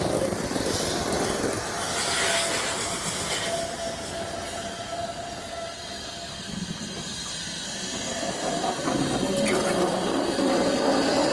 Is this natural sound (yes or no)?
yes